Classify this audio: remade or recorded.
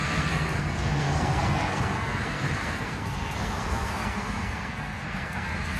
remade